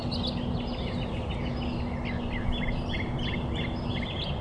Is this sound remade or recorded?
recorded